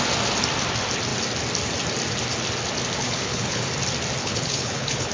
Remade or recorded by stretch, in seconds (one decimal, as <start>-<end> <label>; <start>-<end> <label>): 0.0-3.0 recorded; 3.0-3.7 remade; 3.7-4.2 recorded; 4.2-5.1 remade